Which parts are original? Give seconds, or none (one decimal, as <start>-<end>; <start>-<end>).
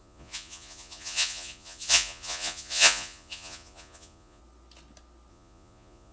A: 4.4-5.3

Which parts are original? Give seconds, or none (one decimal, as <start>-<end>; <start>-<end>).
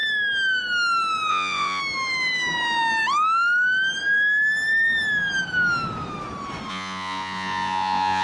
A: 0.0-1.3; 1.8-6.7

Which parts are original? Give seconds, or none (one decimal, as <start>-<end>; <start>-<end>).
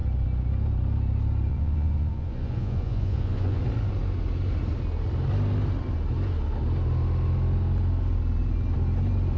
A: 0.0-1.5; 3.6-9.4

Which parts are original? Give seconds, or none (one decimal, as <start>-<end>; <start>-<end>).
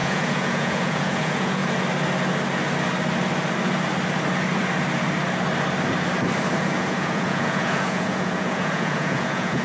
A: 1.6-6.6